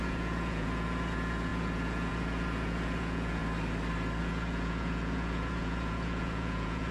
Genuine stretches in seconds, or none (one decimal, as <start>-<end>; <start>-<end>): 3.4-4.2